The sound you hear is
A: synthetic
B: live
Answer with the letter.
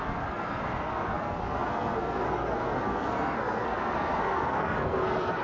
A